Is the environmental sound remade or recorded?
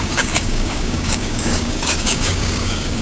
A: remade